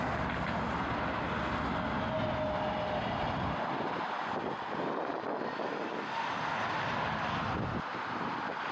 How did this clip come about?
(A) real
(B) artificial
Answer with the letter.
A